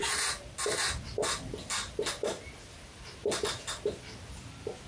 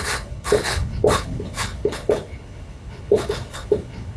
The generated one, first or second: second